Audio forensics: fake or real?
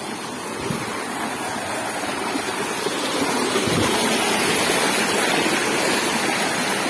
real